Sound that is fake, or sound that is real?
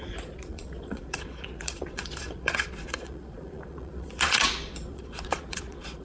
fake